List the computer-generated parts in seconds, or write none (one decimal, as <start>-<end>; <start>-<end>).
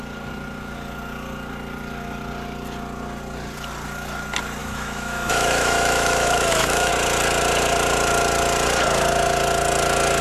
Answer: 4.6-6.9